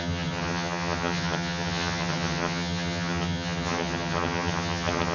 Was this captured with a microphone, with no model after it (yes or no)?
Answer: no